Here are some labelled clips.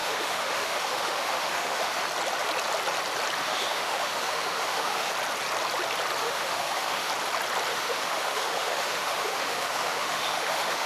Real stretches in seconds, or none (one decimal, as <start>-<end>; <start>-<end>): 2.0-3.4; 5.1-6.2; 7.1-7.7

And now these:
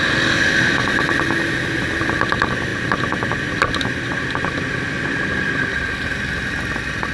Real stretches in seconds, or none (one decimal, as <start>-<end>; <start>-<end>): 0.0-7.1

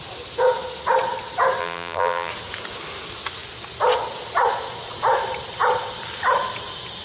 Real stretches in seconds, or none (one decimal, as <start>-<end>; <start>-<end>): 0.0-1.6; 2.3-7.0

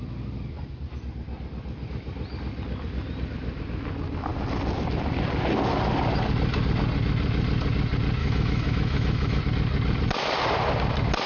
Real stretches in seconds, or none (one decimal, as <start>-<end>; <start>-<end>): 0.0-8.2; 9.4-11.3

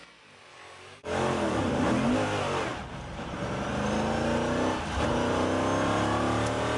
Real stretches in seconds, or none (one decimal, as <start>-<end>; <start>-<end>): 0.0-0.5; 1.6-6.8

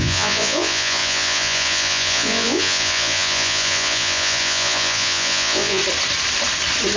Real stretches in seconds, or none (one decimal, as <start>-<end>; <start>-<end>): 5.8-7.0

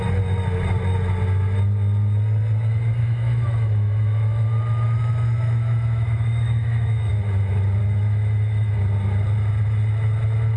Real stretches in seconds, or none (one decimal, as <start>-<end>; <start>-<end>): 0.0-3.0; 7.1-7.8; 8.8-10.6

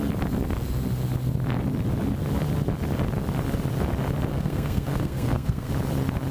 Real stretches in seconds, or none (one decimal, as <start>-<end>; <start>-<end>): 0.0-4.3; 5.7-6.3